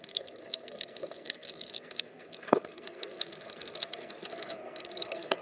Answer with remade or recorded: remade